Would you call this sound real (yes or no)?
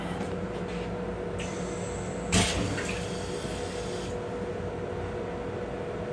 yes